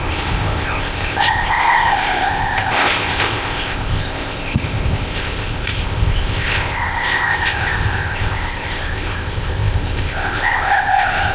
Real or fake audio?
fake